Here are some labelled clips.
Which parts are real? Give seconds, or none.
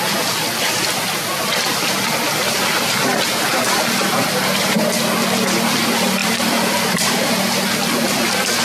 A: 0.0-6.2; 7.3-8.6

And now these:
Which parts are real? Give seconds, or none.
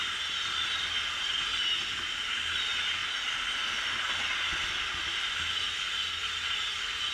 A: 0.0-7.1